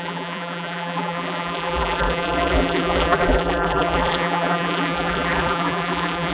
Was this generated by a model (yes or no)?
yes